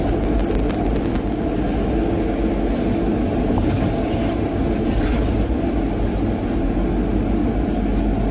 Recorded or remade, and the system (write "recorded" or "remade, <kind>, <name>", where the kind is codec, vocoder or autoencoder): recorded